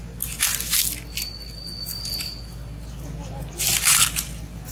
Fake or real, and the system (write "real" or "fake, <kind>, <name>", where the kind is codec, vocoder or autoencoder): real